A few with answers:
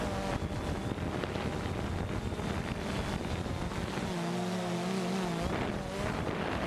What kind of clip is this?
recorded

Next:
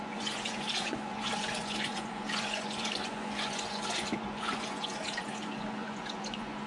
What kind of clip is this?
remade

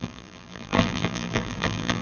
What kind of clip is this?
remade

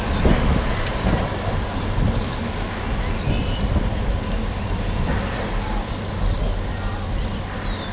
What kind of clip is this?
recorded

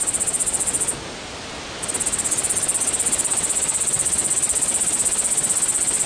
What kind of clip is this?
recorded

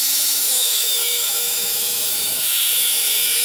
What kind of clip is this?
remade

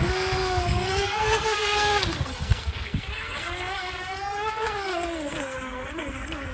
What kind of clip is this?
remade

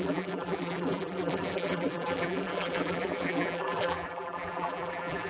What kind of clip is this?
remade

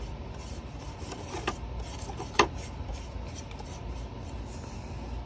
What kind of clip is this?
recorded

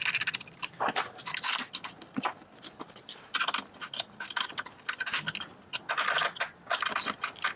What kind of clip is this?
recorded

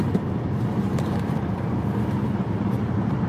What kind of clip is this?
remade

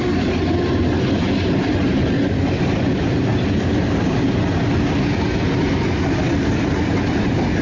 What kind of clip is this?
recorded